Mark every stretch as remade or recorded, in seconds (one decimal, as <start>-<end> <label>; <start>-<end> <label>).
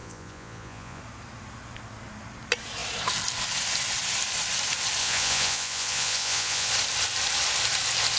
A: 0.0-1.0 remade; 1.0-5.0 recorded; 5.0-6.7 remade; 6.7-8.2 recorded